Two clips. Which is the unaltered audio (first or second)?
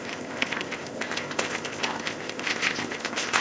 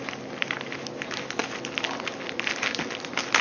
second